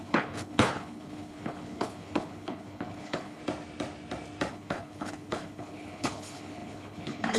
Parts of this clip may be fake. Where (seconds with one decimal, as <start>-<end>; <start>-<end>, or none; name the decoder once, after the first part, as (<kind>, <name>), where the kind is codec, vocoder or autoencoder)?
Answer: 0.0-3.4 (codec, HILCodec); 4.5-7.4